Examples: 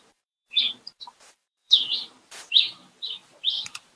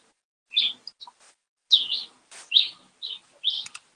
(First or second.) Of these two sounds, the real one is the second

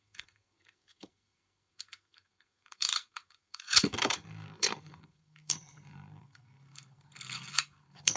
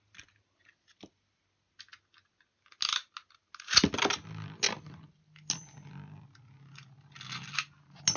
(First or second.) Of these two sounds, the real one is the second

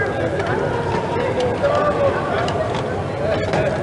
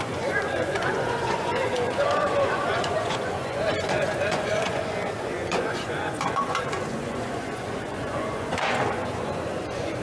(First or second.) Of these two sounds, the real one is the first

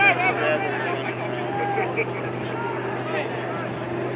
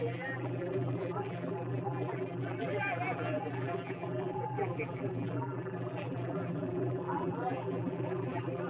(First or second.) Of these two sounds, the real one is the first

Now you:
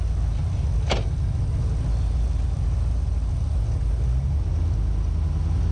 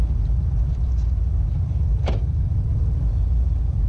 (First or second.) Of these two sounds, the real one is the first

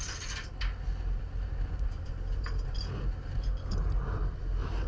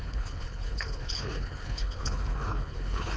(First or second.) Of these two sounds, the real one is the first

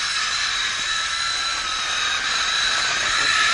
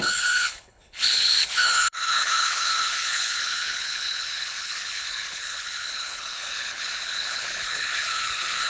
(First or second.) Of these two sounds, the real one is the first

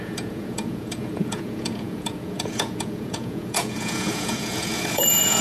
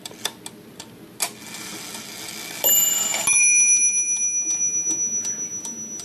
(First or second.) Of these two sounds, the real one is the second